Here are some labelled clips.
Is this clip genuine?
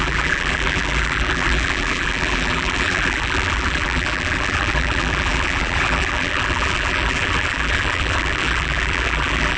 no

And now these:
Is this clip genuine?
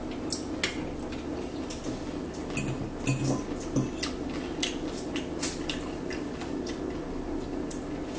yes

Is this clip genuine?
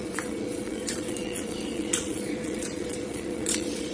no